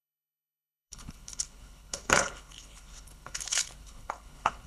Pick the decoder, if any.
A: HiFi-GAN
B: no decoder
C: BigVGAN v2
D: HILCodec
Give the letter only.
D